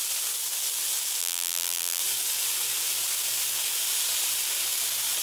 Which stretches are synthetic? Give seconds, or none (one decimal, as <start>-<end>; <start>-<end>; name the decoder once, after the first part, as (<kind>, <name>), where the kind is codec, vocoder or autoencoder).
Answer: 1.2-2.0 (vocoder, BigVGAN v2)

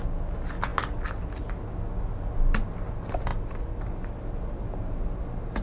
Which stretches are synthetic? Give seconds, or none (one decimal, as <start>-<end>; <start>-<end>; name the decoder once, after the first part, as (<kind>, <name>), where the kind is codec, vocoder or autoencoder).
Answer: none

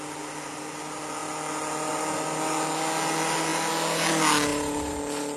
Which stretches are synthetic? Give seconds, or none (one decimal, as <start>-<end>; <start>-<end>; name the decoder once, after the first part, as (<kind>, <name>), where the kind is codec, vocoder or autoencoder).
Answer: 4.5-5.0 (vocoder, BigVGAN v2)